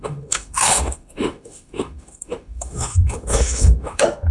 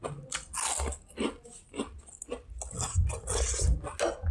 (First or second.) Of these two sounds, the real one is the second